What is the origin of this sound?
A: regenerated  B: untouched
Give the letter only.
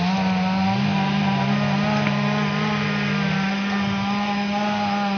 B